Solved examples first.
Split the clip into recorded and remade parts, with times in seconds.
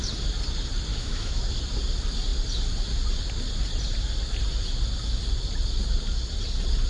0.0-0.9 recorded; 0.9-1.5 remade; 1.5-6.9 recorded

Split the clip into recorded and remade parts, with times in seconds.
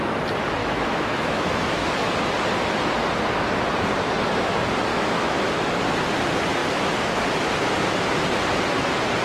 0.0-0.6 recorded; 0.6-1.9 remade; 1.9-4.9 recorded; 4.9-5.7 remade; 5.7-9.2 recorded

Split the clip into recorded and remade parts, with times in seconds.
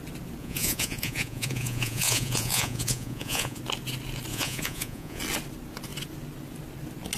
0.0-0.4 recorded; 0.4-3.6 remade; 3.6-4.3 recorded; 4.3-5.2 remade; 5.2-7.2 recorded